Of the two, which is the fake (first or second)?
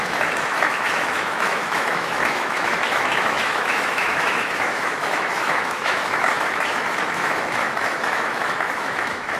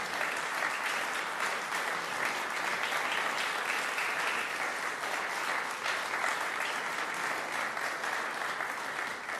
first